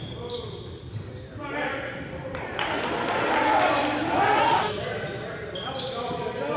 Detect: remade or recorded remade